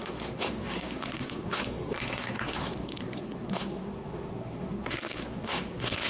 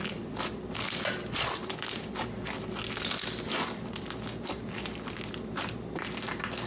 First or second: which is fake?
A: first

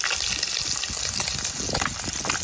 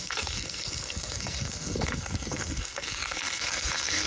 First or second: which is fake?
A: second